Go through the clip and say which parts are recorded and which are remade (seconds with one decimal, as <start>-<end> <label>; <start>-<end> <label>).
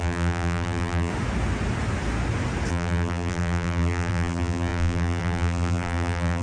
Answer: 0.0-1.1 remade; 1.1-2.7 recorded; 2.7-6.4 remade